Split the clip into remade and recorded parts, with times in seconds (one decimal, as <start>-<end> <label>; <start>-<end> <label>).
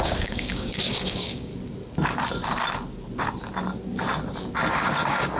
0.0-1.5 remade; 1.5-4.7 recorded; 4.7-5.4 remade